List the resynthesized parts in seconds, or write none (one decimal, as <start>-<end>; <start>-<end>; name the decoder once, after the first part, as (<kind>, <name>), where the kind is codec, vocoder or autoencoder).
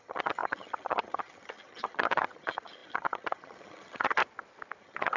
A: 0.0-4.2 (vocoder, HiFi-GAN); 4.8-5.2